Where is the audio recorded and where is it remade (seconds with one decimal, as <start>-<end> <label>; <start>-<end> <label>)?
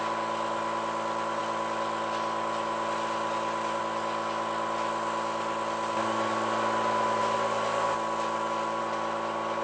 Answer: 0.0-9.6 recorded